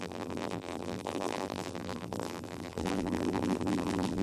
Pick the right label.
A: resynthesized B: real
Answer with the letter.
A